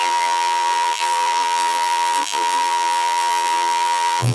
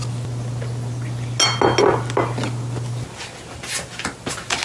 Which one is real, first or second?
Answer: second